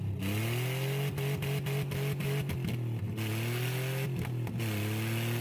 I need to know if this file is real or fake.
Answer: real